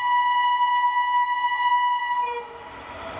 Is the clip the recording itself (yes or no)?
yes